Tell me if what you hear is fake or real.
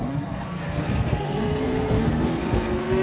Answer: fake